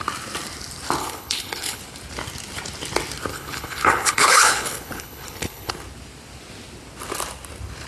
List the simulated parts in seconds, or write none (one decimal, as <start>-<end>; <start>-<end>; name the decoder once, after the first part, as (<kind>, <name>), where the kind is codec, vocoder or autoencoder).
1.0-1.8 (codec, HILCodec); 3.3-5.7